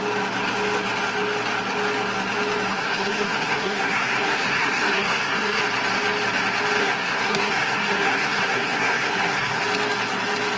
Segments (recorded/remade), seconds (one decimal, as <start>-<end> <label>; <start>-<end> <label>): 0.0-2.7 recorded; 2.7-5.6 remade; 5.6-6.8 recorded; 6.8-9.6 remade; 9.6-10.6 recorded